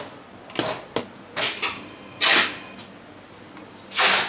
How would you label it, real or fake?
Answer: real